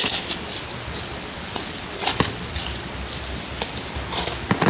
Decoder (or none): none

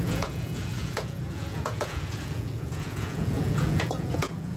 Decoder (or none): vocoder, Vocos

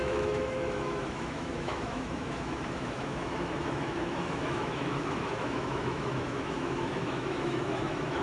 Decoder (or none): autoencoder, DAC-VAE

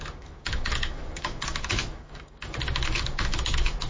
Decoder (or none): autoencoder, DAC-VAE